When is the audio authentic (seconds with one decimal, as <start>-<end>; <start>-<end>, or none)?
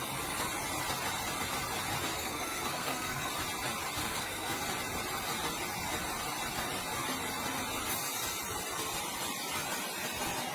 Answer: 0.0-2.1; 3.3-4.0; 4.6-10.5